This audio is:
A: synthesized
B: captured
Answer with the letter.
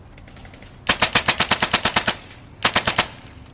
B